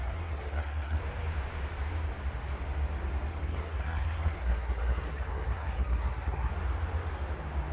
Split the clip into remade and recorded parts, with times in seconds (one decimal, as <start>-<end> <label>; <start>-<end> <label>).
0.0-1.0 remade; 1.0-3.3 recorded; 3.3-6.5 remade; 6.5-7.7 recorded